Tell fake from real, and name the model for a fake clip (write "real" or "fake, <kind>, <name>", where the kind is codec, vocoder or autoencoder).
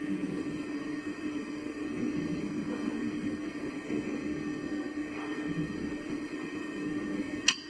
fake, codec, SNAC